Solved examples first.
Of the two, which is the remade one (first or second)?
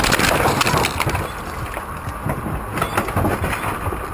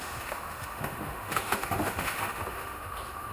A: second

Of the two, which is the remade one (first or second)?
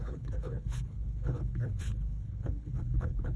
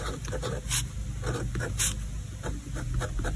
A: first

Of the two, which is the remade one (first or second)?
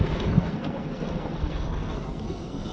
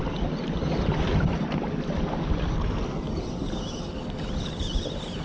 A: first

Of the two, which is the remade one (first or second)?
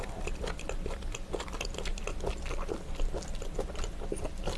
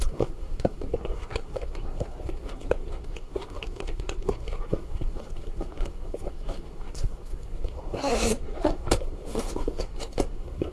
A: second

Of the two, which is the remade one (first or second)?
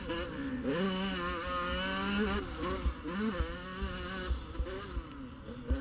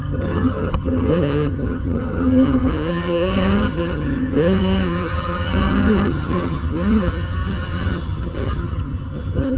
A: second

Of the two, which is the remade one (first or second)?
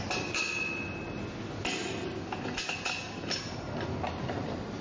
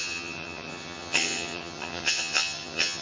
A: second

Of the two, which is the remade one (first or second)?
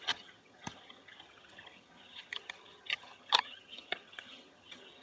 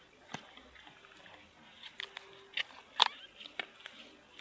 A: first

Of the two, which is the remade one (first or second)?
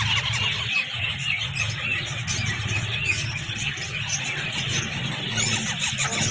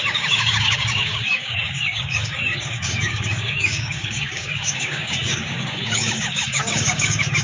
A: second